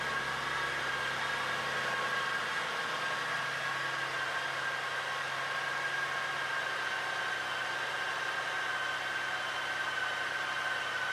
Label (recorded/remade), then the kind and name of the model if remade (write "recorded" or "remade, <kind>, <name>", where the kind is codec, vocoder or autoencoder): recorded